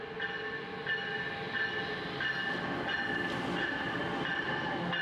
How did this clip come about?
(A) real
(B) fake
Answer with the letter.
A